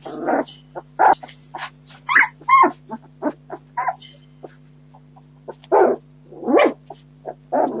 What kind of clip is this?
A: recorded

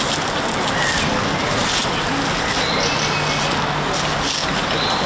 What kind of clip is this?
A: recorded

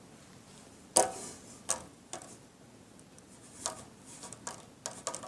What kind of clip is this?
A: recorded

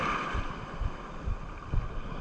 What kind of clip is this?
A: recorded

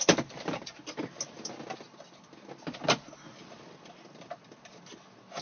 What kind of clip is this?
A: recorded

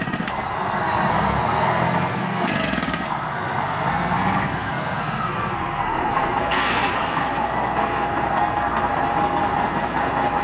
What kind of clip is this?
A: remade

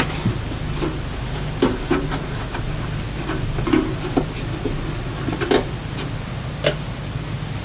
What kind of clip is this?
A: recorded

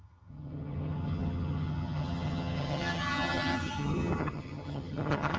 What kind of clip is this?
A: remade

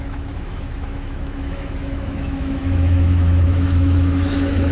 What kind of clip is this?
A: remade